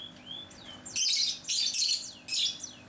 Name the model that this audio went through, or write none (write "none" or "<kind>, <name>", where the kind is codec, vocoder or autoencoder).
none